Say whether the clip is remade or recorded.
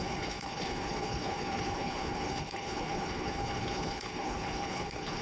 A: remade